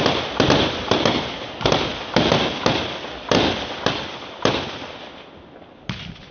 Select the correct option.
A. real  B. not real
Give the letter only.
A